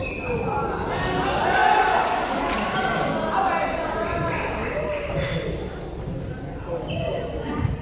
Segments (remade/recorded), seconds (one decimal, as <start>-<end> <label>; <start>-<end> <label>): 0.0-7.8 recorded